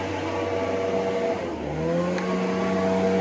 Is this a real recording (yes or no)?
yes